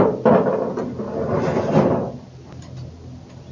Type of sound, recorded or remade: recorded